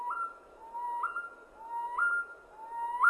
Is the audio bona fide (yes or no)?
yes